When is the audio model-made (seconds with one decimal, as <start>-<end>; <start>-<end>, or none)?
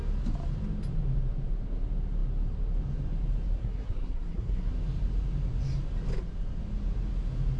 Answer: 3.6-4.7